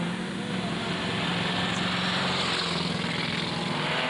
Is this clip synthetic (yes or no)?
no